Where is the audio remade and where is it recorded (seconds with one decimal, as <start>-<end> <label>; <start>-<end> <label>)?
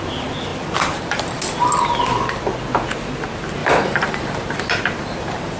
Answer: 0.0-0.5 recorded; 0.5-1.4 remade; 1.4-3.6 recorded; 3.6-5.6 remade